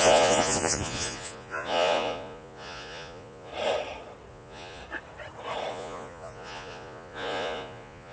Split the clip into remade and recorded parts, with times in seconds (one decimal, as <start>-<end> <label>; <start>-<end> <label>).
0.0-3.5 remade; 3.5-4.3 recorded; 4.3-4.8 remade; 4.8-5.7 recorded; 5.7-8.1 remade